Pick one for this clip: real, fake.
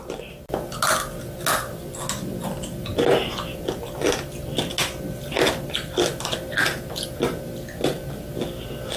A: real